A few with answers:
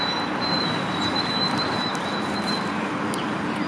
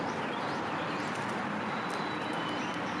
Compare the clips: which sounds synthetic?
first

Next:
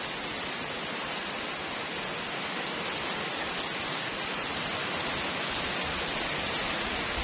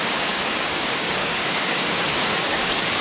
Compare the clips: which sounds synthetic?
second